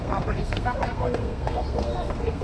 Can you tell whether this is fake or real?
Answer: fake